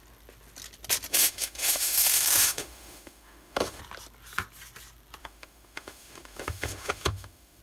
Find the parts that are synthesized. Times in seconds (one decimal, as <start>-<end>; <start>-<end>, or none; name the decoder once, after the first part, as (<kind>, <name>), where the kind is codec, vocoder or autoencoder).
1.1-3.8 (autoencoder, DAC-VAE); 5.2-7.6